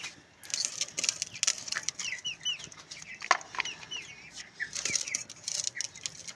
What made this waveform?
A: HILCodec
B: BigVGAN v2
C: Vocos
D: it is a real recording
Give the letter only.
D